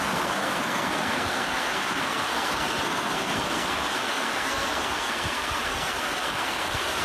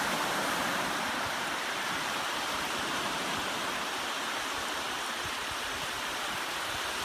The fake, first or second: first